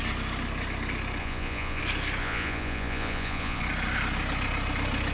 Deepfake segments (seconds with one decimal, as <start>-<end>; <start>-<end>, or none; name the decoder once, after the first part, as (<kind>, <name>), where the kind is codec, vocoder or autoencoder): 1.2-1.8 (vocoder, Vocos); 2.2-3.6